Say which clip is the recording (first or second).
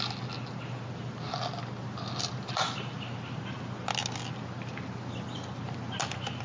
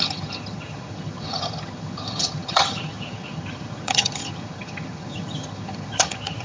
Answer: first